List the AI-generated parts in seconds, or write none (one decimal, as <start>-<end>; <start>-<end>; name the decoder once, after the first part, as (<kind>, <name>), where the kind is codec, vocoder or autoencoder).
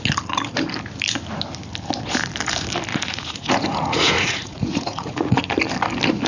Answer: 2.9-5.5 (vocoder, Vocos)